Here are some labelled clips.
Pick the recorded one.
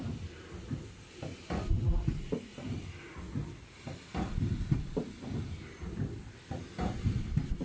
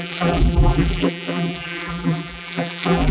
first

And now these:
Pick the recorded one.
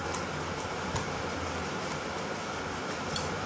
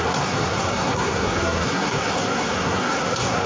first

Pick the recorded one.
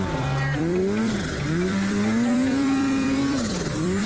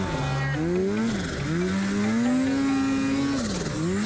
second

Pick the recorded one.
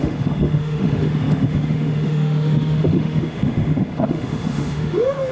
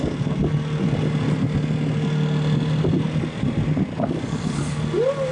second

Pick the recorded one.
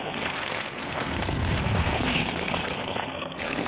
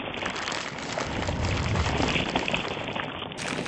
second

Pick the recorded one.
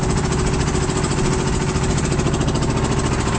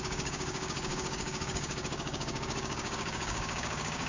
first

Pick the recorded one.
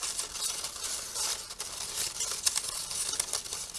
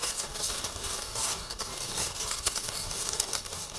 first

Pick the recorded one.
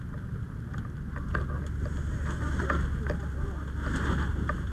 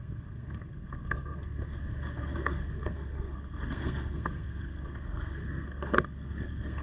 first